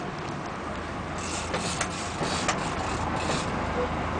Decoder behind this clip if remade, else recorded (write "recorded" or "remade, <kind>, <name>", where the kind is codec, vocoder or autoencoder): recorded